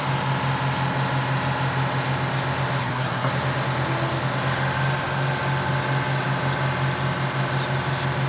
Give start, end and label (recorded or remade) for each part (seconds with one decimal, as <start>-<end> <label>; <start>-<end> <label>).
0.0-2.8 recorded; 2.8-3.3 remade; 3.3-8.3 recorded